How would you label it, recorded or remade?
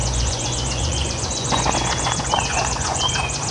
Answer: remade